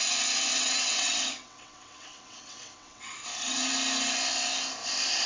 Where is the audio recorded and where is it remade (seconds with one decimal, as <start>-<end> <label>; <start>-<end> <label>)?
0.0-0.5 recorded; 0.5-3.7 remade; 3.7-5.3 recorded